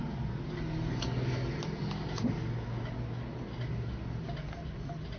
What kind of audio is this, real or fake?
real